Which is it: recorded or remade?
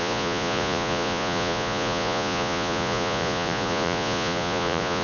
remade